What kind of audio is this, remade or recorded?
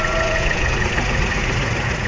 remade